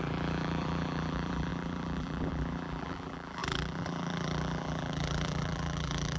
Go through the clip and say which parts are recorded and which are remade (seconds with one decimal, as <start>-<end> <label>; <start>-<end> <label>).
0.0-6.2 remade